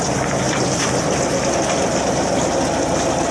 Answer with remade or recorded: recorded